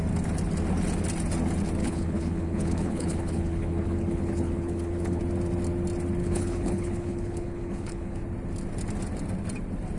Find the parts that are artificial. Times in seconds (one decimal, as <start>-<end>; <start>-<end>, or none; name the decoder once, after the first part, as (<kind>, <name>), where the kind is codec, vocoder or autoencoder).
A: 1.8-5.2 (codec, HILCodec); 6.2-8.2